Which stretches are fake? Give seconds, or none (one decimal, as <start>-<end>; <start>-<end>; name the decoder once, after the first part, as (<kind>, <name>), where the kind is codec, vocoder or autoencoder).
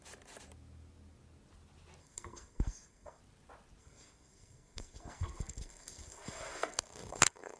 2.0-3.2 (codec, SNAC); 3.8-7.6